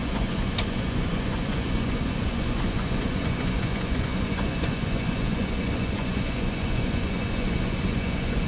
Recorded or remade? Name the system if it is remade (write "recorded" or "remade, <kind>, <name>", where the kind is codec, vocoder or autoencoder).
remade, vocoder, Vocos